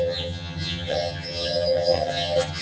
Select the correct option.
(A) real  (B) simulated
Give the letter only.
B